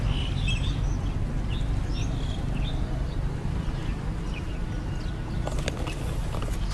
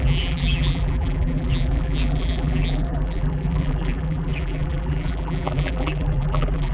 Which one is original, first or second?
first